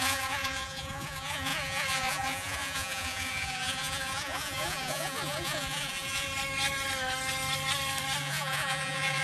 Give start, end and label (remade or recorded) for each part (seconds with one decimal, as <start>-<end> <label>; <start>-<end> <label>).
0.0-6.3 remade; 6.3-8.2 recorded; 8.2-9.2 remade